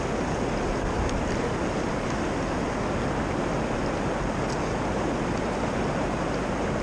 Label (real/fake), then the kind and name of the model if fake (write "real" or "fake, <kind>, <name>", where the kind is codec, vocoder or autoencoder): real